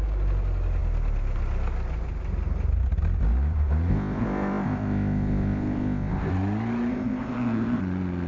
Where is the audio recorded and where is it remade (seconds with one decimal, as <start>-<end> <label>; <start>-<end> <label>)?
0.0-3.9 recorded; 3.9-6.3 remade; 6.3-6.9 recorded; 6.9-7.8 remade; 7.8-8.3 recorded